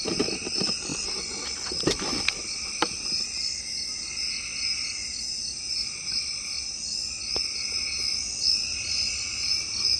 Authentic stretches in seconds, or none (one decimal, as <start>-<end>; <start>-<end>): 0.0-10.0

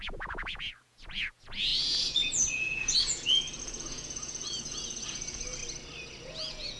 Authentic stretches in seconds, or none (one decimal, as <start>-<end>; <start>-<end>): 5.6-6.3